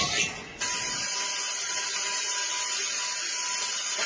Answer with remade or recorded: recorded